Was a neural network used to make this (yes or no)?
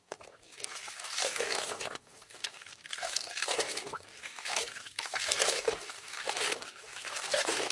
yes